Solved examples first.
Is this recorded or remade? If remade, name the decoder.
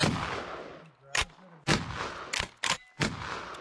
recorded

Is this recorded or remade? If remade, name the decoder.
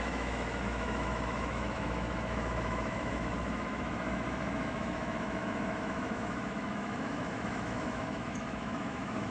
remade, autoencoder, DAC-VAE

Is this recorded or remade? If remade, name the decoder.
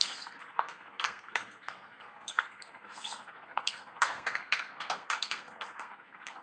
remade, codec, SNAC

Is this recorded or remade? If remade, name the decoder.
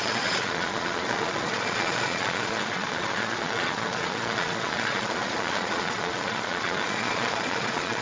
remade, vocoder, Vocos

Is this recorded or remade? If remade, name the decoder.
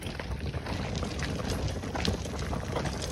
recorded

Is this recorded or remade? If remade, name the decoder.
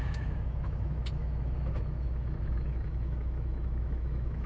remade, autoencoder, DAC-VAE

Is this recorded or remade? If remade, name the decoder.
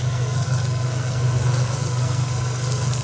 remade, codec, SNAC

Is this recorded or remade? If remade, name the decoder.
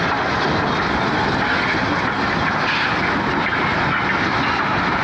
recorded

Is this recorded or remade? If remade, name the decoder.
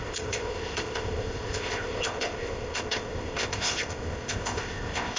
remade, codec, ZipCodec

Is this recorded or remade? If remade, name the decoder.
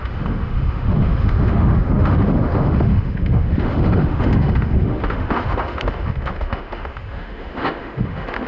remade, autoencoder, DAC-VAE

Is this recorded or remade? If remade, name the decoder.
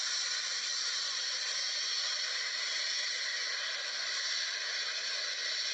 recorded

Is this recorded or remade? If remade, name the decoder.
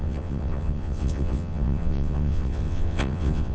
remade, vocoder, WaveNeXt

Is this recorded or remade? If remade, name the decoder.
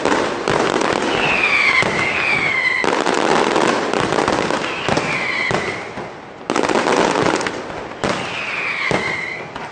recorded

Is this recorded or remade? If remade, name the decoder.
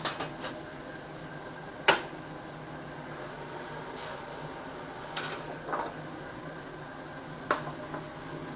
recorded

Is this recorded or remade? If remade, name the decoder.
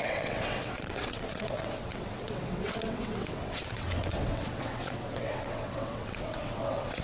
remade, vocoder, WaveNeXt